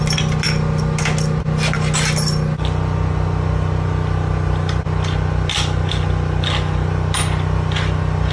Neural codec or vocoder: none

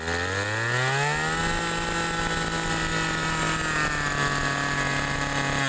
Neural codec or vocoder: none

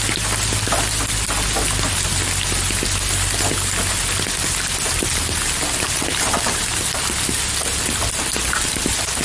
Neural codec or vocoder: none